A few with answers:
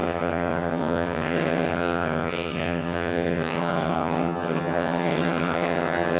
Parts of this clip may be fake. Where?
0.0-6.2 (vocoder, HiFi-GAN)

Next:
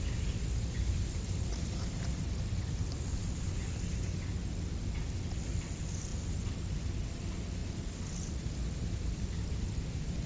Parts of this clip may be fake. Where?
none

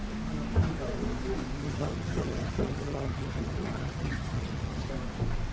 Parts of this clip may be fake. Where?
1.6-4.9 (vocoder, HiFi-GAN)

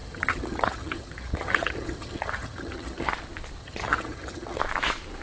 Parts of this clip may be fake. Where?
0.0-3.1 (vocoder, HiFi-GAN); 3.6-4.6

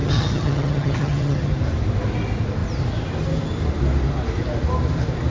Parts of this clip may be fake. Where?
0.0-1.5 (vocoder, HiFi-GAN)